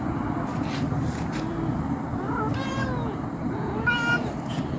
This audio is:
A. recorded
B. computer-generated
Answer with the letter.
A